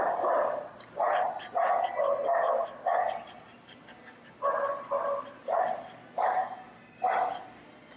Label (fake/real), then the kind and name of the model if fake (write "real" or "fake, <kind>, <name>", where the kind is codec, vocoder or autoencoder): real